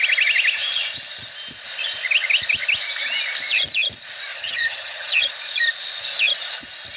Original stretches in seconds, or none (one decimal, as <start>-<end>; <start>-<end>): 0.0-4.3; 5.3-7.0